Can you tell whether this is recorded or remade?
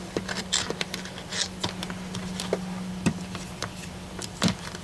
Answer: remade